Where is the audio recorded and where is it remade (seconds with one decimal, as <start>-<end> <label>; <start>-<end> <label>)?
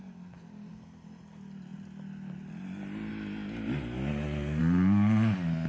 0.0-5.7 recorded